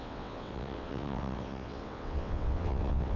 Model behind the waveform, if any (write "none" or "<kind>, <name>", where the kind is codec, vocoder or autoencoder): vocoder, WaveNeXt